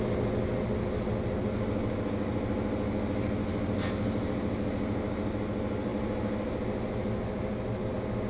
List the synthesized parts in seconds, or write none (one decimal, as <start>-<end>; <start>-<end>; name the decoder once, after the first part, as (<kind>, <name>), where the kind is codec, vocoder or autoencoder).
none